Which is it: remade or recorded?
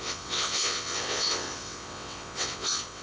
remade